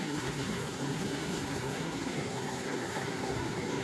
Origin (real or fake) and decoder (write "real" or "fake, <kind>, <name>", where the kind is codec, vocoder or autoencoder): fake, codec, SNAC